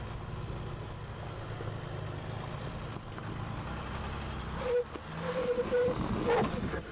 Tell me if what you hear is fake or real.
real